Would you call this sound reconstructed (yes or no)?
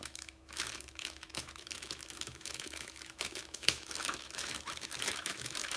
yes